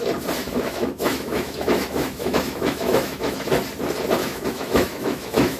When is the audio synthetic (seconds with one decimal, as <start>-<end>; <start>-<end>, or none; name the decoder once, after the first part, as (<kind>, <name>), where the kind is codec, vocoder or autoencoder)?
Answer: 0.4-3.5 (autoencoder, DAC-VAE); 4.2-5.6